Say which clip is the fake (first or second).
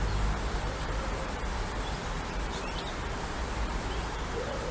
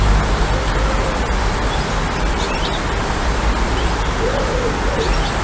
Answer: first